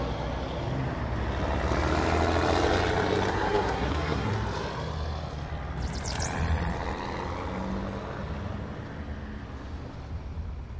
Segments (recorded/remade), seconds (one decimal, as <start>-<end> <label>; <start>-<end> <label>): 0.0-3.3 recorded; 3.3-4.3 remade; 4.3-10.8 recorded